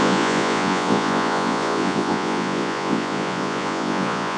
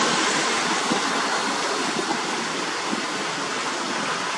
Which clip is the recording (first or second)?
second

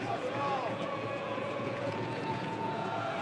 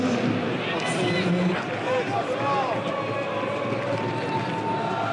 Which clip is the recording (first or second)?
second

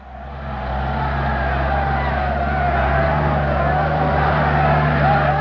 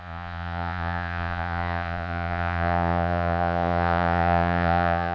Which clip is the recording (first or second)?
first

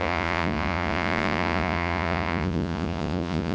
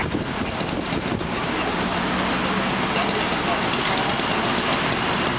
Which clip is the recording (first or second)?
second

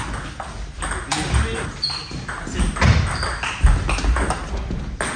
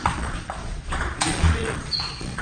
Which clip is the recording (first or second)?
first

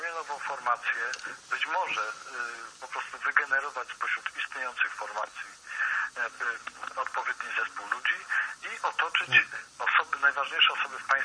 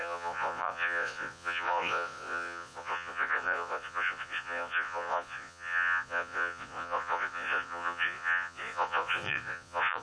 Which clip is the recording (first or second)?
first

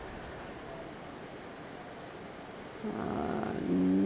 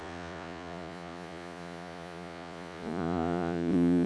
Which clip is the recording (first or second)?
first